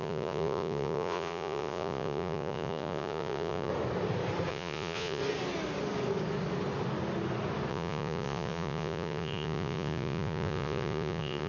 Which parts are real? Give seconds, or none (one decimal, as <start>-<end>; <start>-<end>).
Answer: 3.7-4.5; 5.2-7.7